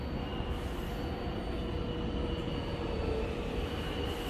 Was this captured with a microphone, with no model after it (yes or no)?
yes